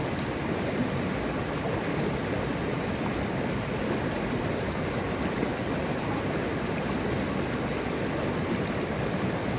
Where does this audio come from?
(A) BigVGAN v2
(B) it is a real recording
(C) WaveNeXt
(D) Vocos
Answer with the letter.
B